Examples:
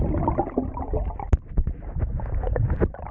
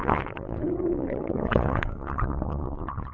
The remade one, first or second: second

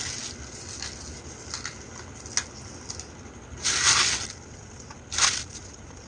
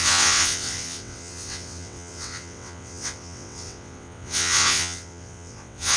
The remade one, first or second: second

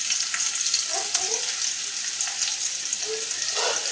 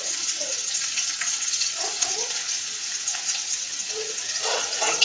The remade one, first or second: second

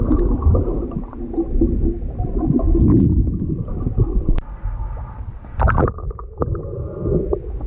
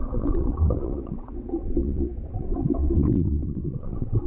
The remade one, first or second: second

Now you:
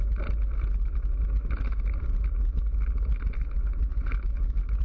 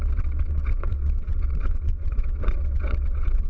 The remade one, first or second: second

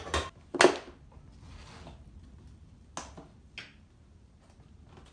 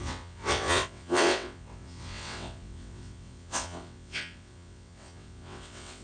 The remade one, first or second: second